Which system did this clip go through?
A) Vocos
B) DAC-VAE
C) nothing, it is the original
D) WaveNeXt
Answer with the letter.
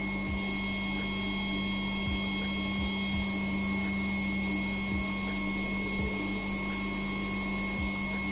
C